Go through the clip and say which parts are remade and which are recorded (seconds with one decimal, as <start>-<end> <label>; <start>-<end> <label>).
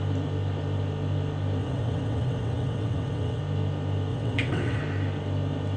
0.0-1.6 recorded; 1.6-3.4 remade; 3.4-4.1 recorded; 4.1-4.8 remade; 4.8-5.8 recorded